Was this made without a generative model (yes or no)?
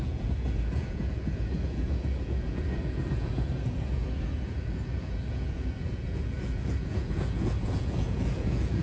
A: no